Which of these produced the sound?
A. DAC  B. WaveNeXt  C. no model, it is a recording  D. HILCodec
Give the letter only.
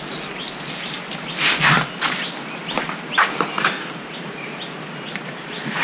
C